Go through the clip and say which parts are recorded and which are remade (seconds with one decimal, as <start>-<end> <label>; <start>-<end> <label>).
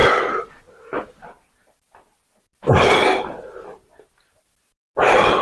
0.0-5.4 recorded